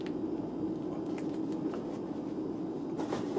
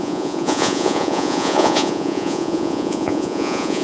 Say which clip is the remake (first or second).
second